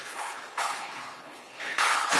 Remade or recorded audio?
remade